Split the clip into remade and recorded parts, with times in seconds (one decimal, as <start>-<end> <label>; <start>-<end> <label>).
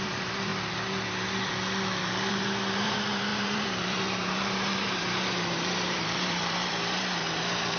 0.0-0.5 remade; 0.5-2.3 recorded; 2.3-7.8 remade